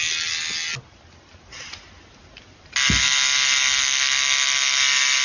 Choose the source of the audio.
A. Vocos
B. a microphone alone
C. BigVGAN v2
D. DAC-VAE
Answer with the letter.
B